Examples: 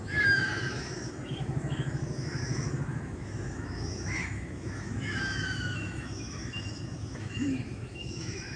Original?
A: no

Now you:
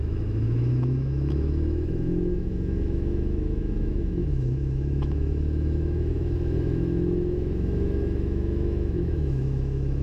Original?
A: no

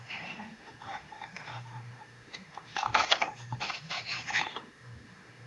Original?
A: no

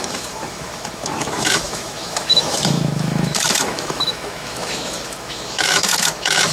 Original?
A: no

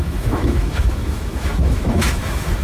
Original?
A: no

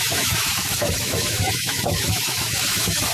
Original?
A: no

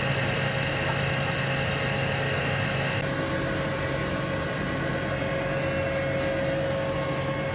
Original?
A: yes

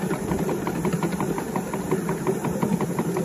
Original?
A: yes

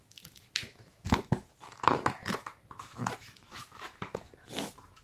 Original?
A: no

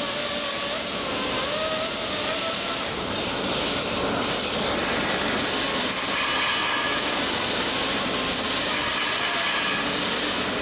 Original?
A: yes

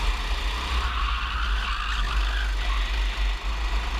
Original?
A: yes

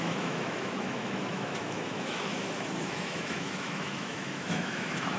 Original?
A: no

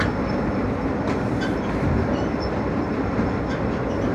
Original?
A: yes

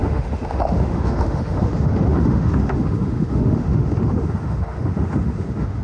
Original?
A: no